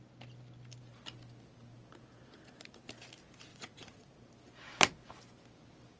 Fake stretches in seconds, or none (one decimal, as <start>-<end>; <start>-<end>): 3.5-4.1